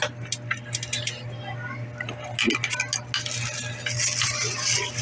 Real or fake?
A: real